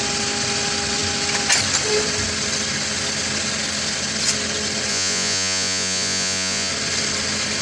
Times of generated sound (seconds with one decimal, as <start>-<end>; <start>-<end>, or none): 4.9-6.7